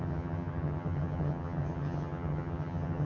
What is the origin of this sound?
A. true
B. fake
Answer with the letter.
B